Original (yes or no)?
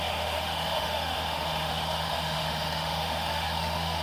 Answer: no